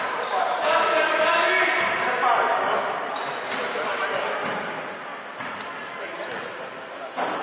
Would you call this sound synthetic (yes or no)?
no